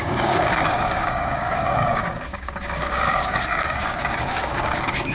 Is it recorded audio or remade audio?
remade